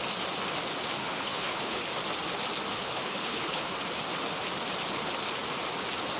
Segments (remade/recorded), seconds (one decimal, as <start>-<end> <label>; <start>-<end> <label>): 0.0-1.0 recorded; 1.0-1.8 remade; 1.8-2.7 recorded; 2.7-3.7 remade; 3.7-6.2 recorded